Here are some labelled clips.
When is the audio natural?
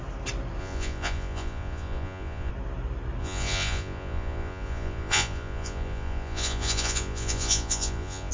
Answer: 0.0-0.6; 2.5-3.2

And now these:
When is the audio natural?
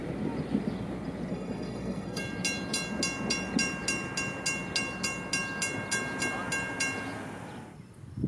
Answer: 0.0-1.3; 2.2-8.3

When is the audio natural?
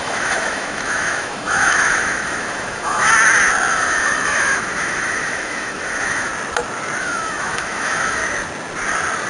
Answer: 3.1-3.7; 6.3-7.0; 8.2-9.3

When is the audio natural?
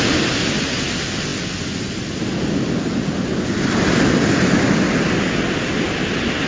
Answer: 0.0-6.5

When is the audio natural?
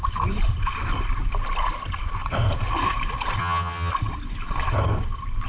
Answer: 0.0-3.4; 3.9-5.5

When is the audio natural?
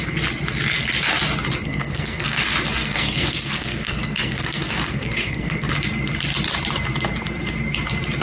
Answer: 0.0-1.6; 2.4-2.8; 5.7-8.2